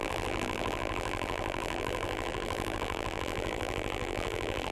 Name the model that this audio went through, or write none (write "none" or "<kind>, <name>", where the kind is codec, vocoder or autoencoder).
vocoder, BigVGAN v2